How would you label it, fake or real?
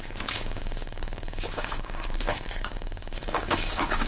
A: fake